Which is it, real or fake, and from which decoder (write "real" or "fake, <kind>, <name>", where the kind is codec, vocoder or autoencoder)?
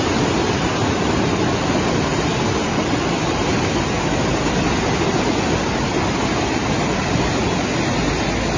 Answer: real